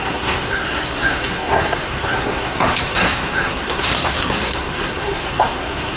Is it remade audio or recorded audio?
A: remade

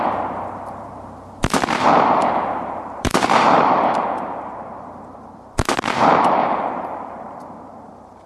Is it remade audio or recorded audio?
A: remade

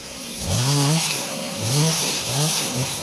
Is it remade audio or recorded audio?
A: remade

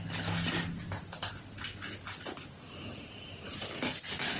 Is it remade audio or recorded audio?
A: recorded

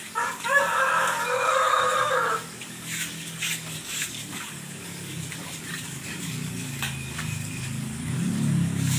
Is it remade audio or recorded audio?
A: remade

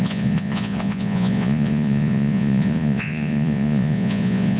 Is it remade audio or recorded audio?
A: remade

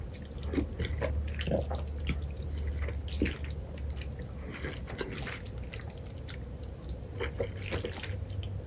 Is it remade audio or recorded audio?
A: recorded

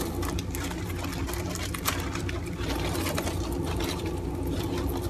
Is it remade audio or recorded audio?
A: recorded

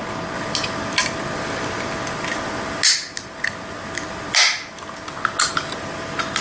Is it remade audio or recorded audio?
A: recorded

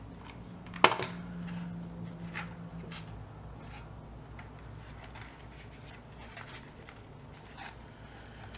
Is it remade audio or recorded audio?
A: recorded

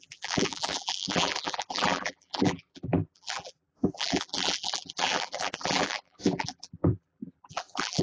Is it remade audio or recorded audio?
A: remade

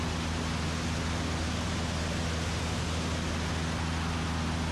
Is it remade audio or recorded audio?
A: recorded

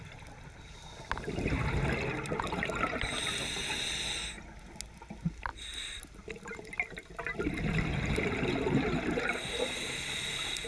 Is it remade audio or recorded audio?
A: recorded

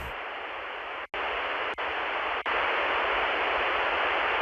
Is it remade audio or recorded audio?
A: recorded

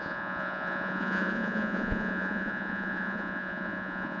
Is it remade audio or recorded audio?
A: remade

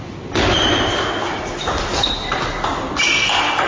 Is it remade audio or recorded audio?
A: recorded